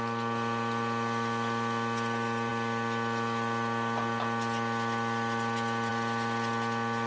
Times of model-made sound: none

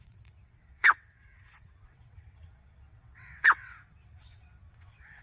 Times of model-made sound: 0.0-5.2 (vocoder, WaveNeXt)